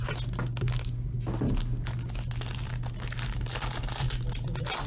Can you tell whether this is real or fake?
real